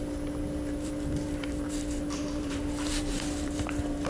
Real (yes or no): no